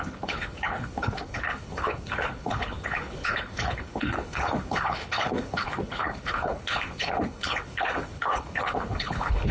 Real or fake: fake